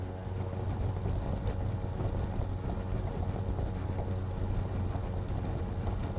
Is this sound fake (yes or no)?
no